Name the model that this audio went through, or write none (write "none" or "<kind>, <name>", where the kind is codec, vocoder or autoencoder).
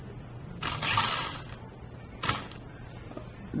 none